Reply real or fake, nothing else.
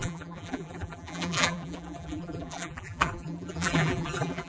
fake